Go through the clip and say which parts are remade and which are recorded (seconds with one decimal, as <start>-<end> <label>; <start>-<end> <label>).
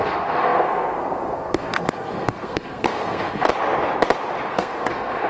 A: 0.0-3.5 remade; 3.5-4.5 recorded; 4.5-5.3 remade